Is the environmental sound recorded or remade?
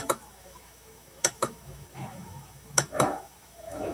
remade